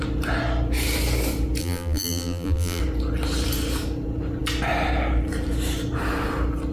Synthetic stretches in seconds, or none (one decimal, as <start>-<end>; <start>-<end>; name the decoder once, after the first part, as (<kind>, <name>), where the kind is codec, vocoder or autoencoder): 1.6-2.8 (vocoder, BigVGAN v2)